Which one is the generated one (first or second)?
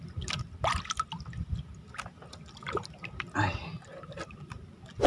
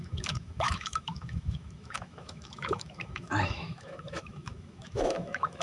second